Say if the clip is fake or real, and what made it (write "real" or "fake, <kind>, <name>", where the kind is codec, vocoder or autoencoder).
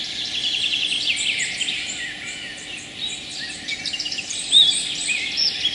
real